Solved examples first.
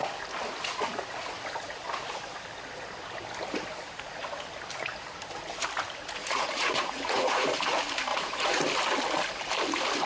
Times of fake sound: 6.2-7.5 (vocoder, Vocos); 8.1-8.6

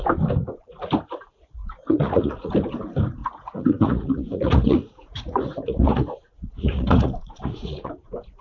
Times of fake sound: 1.6-2.5 (vocoder, Vocos); 3.2-7.9